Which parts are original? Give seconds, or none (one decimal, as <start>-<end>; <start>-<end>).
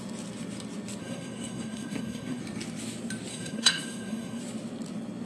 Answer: 0.0-1.0; 2.4-3.3; 4.4-5.3